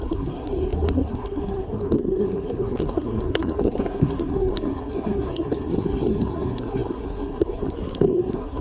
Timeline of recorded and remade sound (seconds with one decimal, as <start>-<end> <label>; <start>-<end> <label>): 0.0-8.6 remade